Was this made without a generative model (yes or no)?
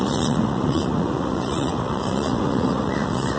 no